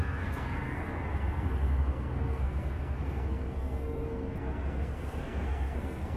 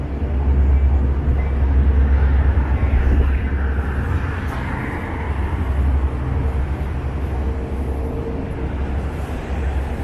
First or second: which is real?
second